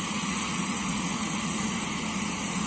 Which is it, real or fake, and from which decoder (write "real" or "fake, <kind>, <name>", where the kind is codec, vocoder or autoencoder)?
fake, vocoder, Vocos